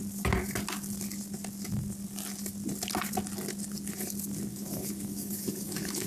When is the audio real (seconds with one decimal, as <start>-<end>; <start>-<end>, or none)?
0.0-4.5